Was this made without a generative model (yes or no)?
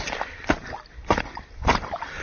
yes